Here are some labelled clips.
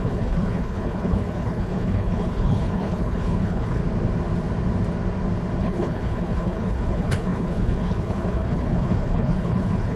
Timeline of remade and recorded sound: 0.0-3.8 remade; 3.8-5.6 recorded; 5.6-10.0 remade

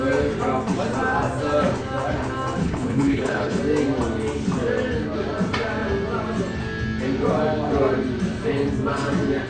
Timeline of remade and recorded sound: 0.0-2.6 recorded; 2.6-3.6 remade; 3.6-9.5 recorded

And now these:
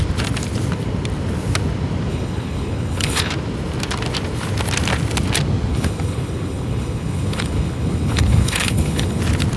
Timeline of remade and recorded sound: 0.0-2.1 recorded; 2.1-3.3 remade; 3.3-5.7 recorded; 5.7-9.2 remade; 9.2-9.6 recorded